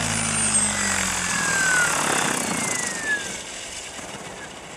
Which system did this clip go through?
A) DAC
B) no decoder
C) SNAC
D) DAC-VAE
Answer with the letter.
B